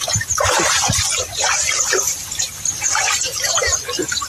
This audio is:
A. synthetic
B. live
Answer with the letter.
A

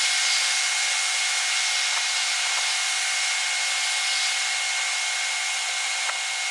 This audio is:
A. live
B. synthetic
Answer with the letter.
A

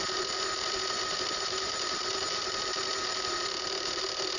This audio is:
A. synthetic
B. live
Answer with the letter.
A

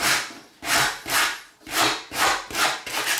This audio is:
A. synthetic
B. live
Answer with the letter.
B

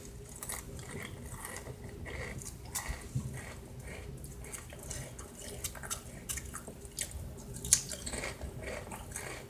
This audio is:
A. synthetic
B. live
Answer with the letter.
B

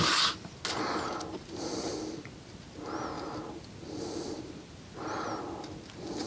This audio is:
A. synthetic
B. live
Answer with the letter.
B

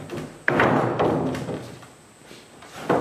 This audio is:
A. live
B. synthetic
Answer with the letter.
A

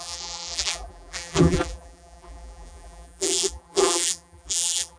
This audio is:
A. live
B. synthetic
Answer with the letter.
B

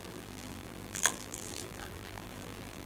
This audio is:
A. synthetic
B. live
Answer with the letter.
A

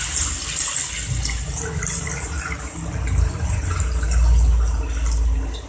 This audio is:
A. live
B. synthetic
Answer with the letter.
A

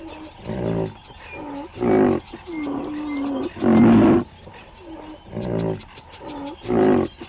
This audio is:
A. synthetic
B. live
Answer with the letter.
B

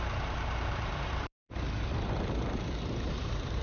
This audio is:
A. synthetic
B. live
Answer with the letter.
A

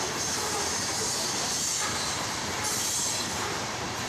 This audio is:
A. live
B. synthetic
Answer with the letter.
B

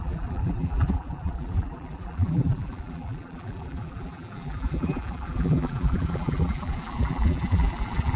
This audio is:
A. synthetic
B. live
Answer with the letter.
A